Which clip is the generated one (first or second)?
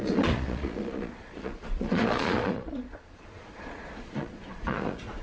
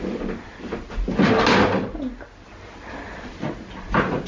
first